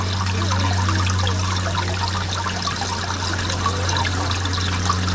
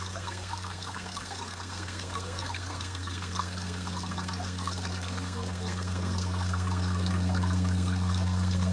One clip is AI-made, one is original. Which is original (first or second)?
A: first